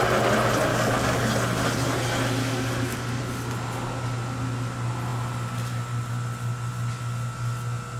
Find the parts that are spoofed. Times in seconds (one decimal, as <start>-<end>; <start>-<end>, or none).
0.7-1.3; 2.4-3.2